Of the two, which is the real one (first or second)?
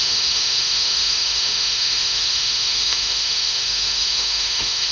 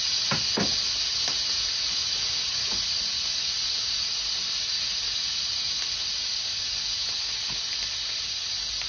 second